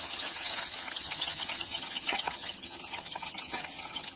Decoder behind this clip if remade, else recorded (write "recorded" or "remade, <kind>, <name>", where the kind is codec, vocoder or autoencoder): remade, vocoder, HiFi-GAN